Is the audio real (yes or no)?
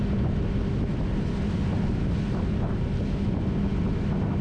yes